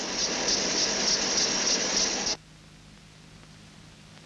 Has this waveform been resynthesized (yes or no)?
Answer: no